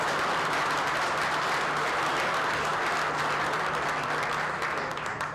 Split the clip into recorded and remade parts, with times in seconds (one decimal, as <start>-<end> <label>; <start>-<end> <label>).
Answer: 0.0-5.3 recorded